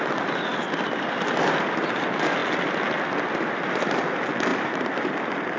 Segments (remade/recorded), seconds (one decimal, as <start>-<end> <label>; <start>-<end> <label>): 0.0-4.5 recorded; 4.5-5.1 remade; 5.1-5.6 recorded